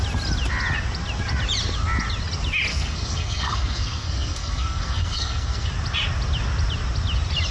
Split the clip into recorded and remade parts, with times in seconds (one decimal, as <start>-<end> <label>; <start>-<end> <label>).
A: 0.0-2.7 recorded; 2.7-5.7 remade; 5.7-7.5 recorded